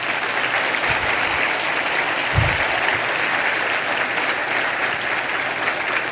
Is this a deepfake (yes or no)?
no